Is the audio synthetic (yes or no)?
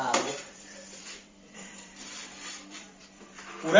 yes